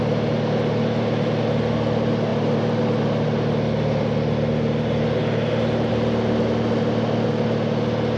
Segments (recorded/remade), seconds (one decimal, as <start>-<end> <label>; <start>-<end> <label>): 0.0-8.2 recorded